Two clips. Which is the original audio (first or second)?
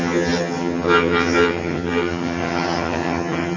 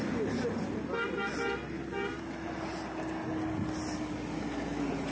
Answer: second